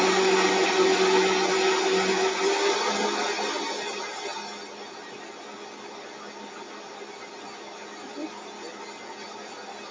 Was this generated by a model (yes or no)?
no